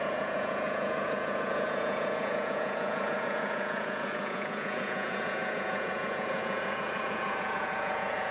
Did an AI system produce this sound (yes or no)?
yes